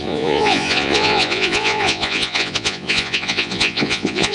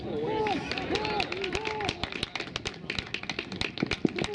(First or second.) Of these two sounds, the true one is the second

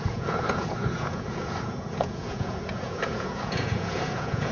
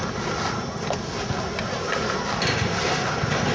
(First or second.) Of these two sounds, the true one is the second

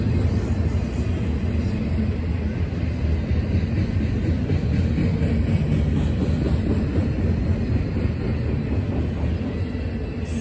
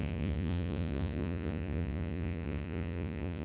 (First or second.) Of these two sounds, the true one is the first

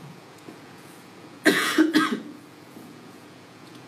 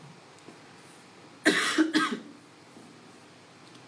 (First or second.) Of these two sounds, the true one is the second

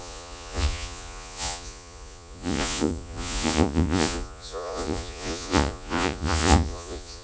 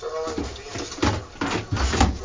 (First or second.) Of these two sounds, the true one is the second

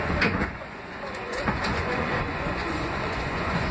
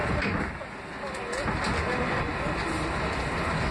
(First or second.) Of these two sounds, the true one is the second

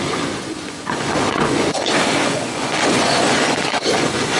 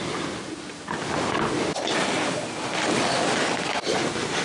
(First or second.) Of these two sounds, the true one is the second